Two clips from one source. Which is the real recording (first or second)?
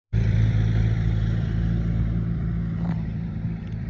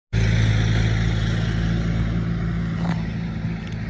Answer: second